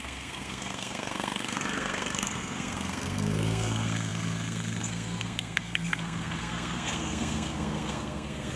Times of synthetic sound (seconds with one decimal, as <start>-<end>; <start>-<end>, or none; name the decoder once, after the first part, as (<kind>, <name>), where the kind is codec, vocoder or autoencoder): 0.0-8.6 (codec, SNAC)